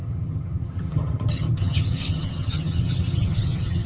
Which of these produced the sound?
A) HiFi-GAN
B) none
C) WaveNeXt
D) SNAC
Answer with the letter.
A